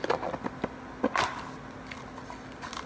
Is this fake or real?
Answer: real